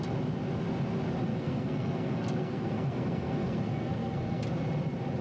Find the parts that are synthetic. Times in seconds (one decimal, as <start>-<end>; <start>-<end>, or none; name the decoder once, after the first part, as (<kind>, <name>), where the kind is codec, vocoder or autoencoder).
1.3-4.4 (codec, SNAC)